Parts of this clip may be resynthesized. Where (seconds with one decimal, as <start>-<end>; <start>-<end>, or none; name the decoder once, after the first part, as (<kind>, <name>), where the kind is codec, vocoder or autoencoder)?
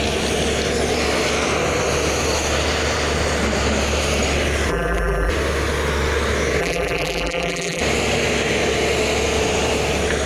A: 4.7-5.3 (vocoder, BigVGAN v2); 6.6-7.8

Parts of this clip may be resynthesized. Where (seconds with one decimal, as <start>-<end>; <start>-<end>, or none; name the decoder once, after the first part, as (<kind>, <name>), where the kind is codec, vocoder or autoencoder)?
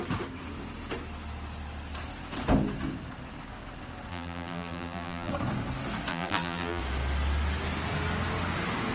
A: 4.1-5.3 (vocoder, BigVGAN v2); 6.1-6.8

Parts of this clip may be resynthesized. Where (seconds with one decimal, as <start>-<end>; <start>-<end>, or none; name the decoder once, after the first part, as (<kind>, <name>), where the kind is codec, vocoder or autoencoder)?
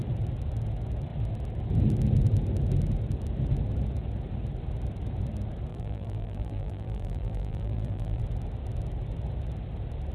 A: 5.7-8.2 (vocoder, BigVGAN v2)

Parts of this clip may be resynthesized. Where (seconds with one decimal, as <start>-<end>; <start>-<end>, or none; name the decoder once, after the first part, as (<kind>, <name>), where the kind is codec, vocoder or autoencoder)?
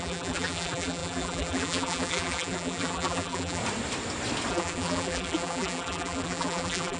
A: 0.0-3.6 (vocoder, BigVGAN v2); 4.5-7.0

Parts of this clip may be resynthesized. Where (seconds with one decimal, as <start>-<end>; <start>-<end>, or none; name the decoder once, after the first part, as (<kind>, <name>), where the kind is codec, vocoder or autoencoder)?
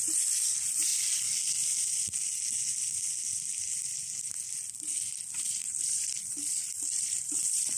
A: 0.0-0.9 (vocoder, BigVGAN v2); 5.6-7.8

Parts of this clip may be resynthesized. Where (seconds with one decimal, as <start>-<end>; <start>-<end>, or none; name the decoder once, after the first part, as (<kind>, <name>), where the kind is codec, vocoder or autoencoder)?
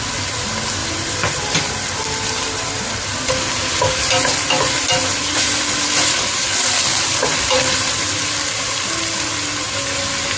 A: 0.8-3.3 (vocoder, BigVGAN v2); 6.9-7.6